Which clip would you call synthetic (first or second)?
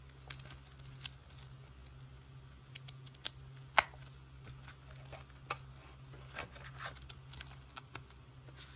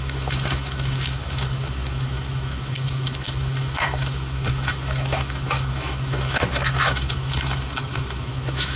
second